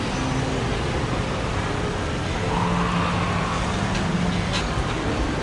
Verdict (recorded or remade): recorded